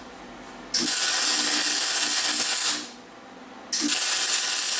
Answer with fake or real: real